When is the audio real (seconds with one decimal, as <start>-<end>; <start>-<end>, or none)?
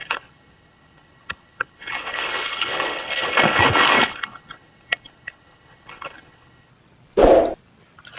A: 6.7-8.2